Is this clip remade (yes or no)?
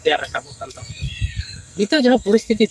yes